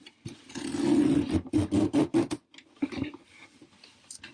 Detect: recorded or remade recorded